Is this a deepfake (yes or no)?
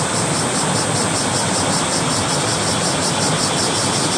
no